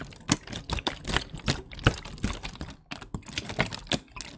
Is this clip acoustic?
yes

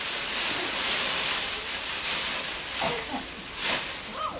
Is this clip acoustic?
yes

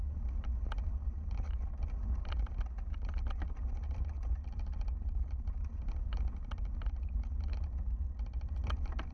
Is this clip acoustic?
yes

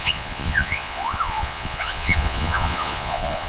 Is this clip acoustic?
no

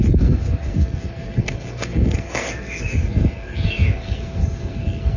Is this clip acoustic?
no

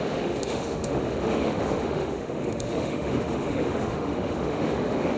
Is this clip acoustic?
no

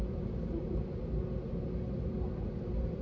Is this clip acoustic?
yes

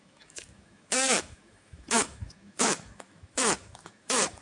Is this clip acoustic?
no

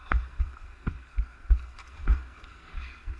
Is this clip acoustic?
no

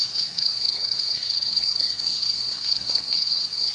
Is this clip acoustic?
no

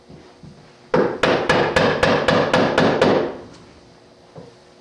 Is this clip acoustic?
yes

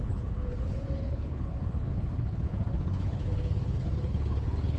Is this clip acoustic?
no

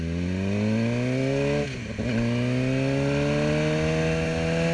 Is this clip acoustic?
yes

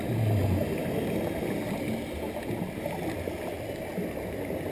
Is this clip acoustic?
yes